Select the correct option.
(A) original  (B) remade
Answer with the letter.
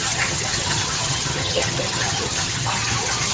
B